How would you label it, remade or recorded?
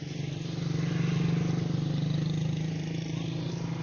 recorded